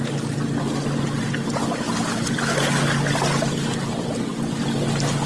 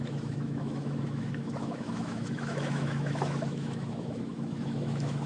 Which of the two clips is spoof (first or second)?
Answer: second